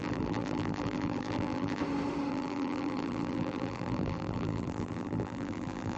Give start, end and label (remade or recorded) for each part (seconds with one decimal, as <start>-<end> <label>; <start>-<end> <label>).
0.0-1.8 remade; 1.8-2.3 recorded; 2.3-6.0 remade